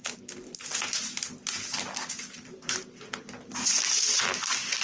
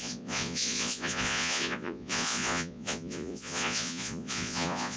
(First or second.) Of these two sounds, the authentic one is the first